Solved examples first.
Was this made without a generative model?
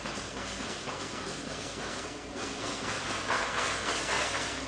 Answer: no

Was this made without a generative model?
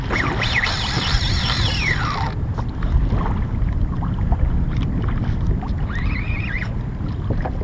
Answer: yes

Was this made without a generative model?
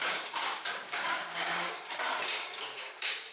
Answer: no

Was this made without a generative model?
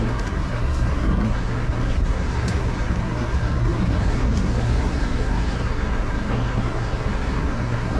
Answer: no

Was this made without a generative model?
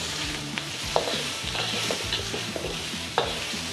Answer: no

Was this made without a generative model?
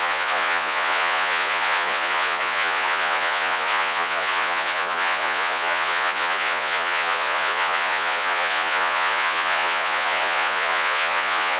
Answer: no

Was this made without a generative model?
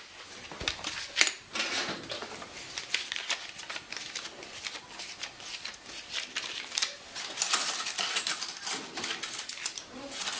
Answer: yes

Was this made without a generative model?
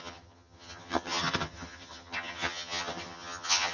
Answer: no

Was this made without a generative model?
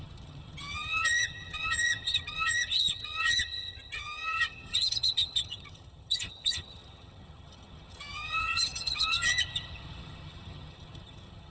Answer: no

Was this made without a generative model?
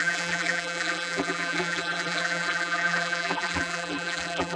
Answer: no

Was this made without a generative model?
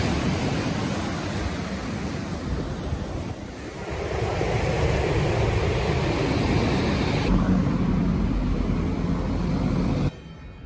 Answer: yes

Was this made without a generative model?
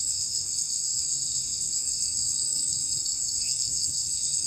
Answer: no